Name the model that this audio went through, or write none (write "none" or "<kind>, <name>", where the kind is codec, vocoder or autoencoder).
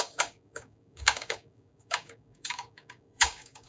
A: codec, DAC